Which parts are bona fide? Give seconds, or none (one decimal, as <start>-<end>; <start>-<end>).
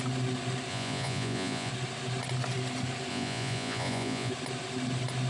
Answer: 0.0-0.7; 1.7-3.1; 4.3-5.3